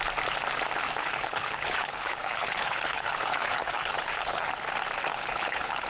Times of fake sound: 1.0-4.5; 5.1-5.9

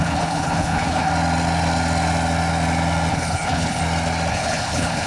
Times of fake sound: 0.0-1.1; 3.1-3.8; 4.3-5.1

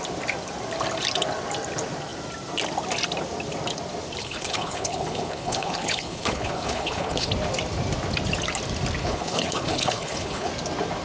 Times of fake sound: 4.2-7.3; 9.0-10.5

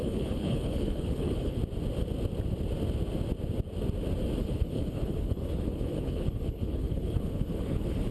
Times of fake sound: 0.0-1.6; 4.4-8.1

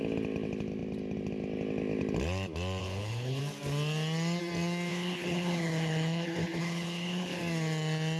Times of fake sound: 2.8-3.4; 4.9-7.4